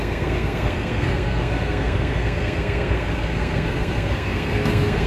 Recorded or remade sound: remade